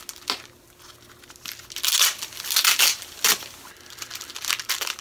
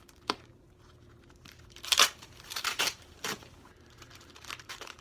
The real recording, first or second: first